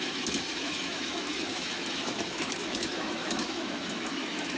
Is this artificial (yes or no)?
yes